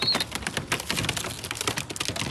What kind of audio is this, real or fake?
real